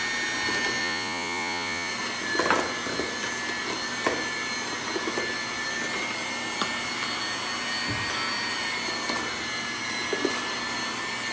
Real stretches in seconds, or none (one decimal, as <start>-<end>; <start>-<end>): 0.0-0.8; 1.9-11.3